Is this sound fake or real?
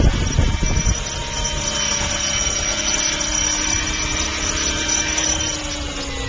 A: real